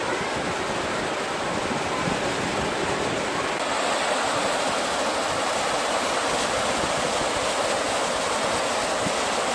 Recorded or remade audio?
recorded